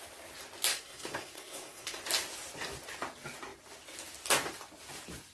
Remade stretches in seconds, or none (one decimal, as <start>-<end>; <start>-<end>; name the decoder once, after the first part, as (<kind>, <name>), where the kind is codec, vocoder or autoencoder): 0.7-2.0 (codec, SNAC)